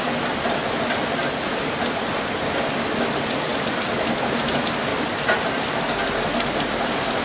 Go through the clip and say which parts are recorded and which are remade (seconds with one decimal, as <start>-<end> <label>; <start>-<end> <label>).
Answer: 0.0-7.2 recorded